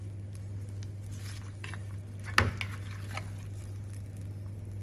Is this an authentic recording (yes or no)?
yes